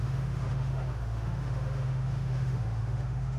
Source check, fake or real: fake